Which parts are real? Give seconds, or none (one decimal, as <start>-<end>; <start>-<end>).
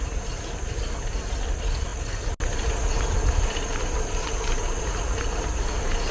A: 0.0-6.1